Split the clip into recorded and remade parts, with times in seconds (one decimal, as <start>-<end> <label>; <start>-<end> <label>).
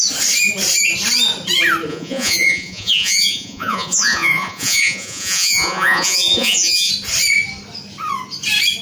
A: 0.0-1.9 recorded; 1.9-6.9 remade; 6.9-8.8 recorded